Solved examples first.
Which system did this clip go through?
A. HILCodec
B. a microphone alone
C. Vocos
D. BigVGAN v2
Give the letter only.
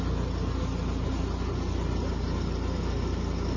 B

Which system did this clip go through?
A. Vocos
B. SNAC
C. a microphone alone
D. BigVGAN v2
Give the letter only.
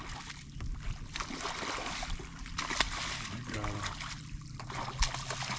C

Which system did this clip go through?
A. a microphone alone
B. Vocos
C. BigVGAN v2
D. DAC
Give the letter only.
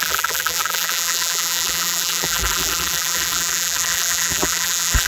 C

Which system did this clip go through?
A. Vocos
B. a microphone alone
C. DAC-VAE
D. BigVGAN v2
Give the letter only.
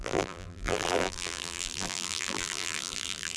D